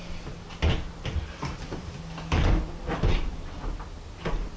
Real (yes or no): yes